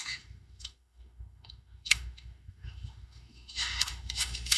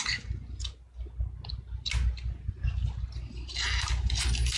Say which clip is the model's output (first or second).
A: first